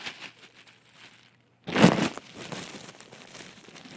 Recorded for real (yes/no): yes